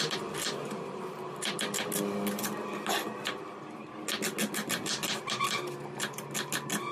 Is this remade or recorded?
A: recorded